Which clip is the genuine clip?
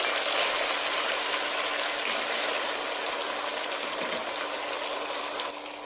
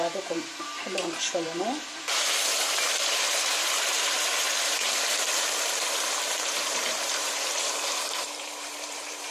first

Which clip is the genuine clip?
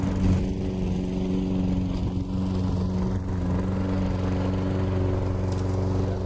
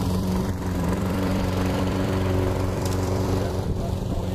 first